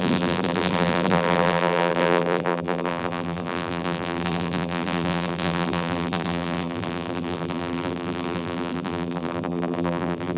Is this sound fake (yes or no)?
yes